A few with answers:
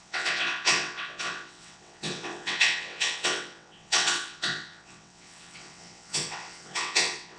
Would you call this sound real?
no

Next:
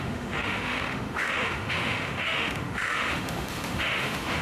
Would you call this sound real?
no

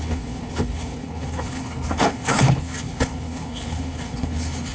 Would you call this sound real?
no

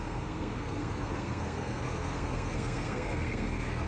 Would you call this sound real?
no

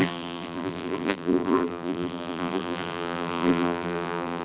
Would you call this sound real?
no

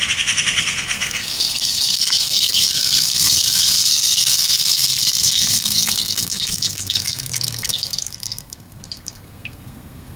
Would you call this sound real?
no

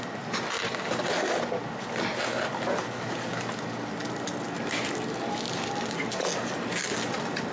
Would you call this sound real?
yes